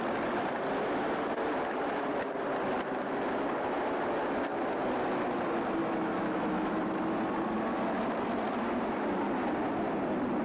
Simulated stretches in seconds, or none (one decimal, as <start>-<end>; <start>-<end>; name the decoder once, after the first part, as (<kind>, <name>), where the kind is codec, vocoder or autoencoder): 5.8-6.7 (autoencoder, DAC-VAE)